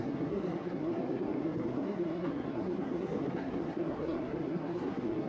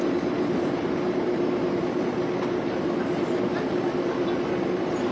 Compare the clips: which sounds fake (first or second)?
first